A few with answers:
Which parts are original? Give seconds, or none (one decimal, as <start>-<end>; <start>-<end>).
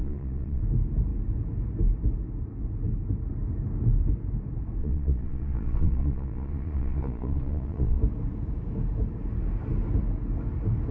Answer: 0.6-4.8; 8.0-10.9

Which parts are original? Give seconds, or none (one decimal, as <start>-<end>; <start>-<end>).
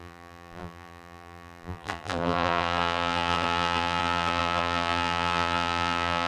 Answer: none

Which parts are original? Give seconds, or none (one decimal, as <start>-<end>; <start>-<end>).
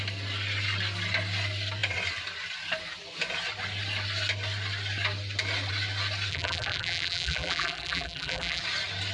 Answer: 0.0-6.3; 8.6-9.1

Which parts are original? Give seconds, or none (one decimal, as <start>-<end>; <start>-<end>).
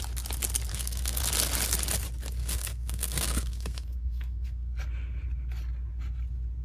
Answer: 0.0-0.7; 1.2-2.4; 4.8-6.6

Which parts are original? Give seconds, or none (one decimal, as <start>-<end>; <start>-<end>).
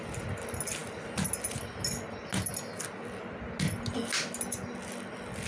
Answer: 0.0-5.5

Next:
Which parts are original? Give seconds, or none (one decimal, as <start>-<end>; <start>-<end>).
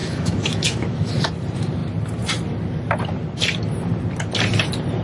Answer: 1.1-5.0